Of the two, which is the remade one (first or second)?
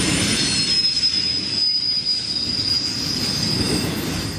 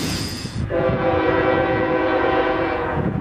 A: second